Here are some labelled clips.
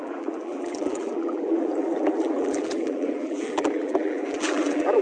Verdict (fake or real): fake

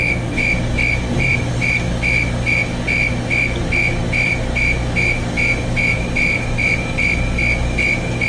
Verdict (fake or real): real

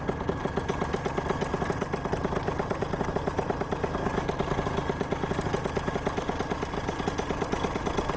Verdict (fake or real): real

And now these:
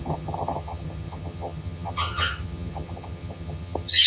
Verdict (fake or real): fake